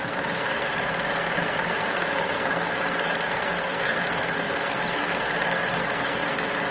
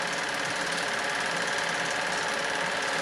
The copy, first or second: first